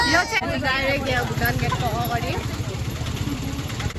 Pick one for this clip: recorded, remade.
remade